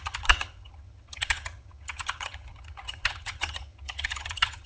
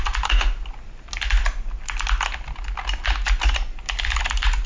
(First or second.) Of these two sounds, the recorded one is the second